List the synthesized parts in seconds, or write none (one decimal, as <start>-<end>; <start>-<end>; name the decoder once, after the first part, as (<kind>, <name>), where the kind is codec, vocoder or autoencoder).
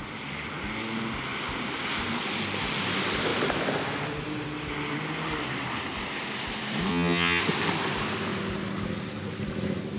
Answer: 6.9-7.4 (vocoder, HiFi-GAN)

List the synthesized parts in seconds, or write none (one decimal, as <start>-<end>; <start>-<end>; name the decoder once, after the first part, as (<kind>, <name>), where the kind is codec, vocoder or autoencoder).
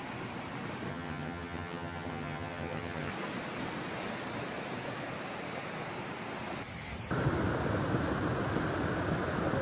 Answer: 0.9-3.1 (vocoder, HiFi-GAN)